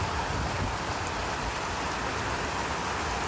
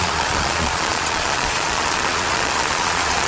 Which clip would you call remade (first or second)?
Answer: second